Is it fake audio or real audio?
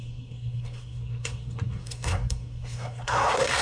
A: fake